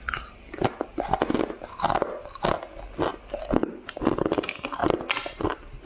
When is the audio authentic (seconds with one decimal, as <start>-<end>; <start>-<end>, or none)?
0.0-4.8